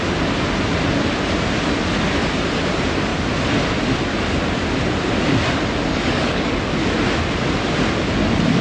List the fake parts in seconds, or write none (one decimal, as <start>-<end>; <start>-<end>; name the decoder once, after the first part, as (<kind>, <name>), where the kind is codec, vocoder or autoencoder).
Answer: 5.9-6.5 (codec, DAC)